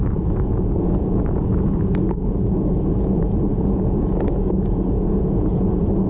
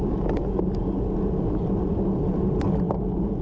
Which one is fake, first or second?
first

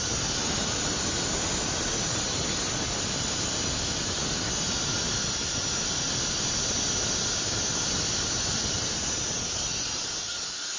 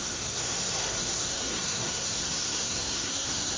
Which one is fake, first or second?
second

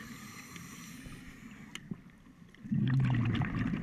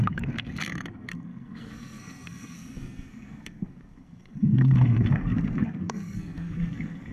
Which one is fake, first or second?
second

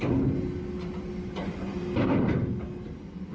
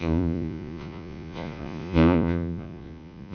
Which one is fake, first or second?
second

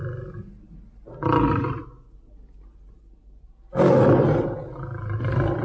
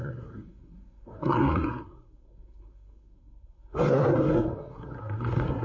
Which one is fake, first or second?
second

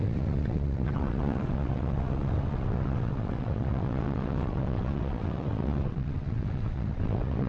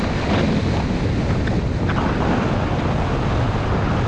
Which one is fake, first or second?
first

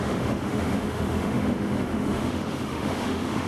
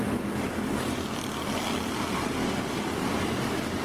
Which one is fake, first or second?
first